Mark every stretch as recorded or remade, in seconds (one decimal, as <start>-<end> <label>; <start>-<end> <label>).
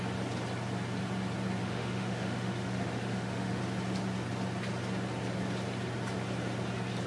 0.0-1.6 recorded; 1.6-3.6 remade; 3.6-7.1 recorded